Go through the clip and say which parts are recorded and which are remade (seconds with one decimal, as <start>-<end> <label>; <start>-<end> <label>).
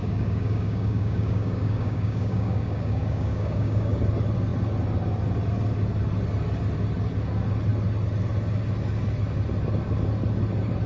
0.0-4.0 remade; 4.0-10.9 recorded